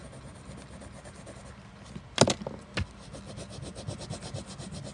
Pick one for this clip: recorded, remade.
recorded